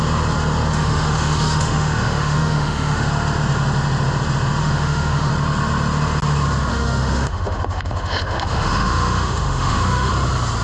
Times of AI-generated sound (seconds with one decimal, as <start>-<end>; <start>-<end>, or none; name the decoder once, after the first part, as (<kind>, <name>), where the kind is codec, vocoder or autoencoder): 0.7-3.1 (autoencoder, DAC-VAE); 4.6-5.3; 6.7-10.1

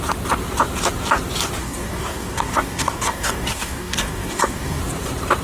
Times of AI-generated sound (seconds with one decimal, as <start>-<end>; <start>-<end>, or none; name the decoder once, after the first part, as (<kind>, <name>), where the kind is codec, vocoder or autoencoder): 1.6-4.8 (codec, DAC)

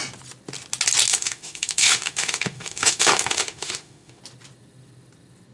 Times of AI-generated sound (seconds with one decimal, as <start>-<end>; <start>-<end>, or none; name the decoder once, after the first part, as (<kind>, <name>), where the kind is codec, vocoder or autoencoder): 1.1-4.2 (autoencoder, DAC-VAE)

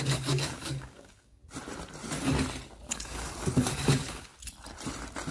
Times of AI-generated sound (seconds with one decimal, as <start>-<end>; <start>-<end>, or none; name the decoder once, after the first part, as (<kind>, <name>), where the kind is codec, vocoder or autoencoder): 0.0-1.4 (codec, DAC); 2.9-4.3

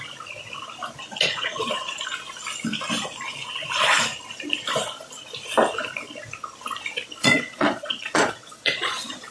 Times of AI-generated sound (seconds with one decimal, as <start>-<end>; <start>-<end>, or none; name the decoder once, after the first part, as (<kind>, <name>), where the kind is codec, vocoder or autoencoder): 1.0-2.0 (vocoder, Vocos); 7.2-9.3

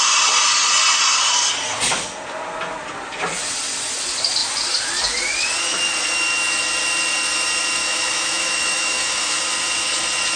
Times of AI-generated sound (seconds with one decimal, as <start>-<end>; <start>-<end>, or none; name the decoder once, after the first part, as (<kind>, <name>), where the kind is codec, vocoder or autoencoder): 7.8-9.4 (autoencoder, DAC-VAE)

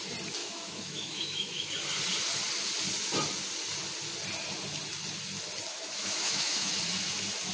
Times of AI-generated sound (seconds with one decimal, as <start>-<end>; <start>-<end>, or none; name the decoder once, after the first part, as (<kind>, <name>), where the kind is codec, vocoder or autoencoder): 0.4-1.7 (autoencoder, DAC-VAE); 5.7-6.7